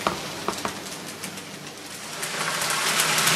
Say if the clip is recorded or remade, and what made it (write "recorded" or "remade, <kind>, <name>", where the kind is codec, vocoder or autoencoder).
recorded